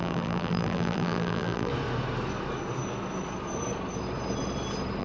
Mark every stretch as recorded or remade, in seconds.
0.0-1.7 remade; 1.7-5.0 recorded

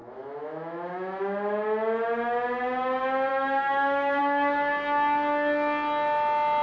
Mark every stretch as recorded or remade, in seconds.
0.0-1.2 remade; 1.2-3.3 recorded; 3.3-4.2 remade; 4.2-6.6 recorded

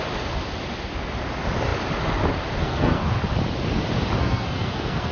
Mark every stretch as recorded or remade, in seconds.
0.0-2.6 recorded; 2.6-3.1 remade; 3.1-4.2 recorded; 4.2-5.1 remade

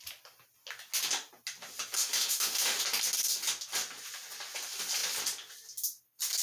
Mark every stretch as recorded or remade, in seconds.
0.0-2.0 recorded; 2.0-2.8 remade; 2.8-6.4 recorded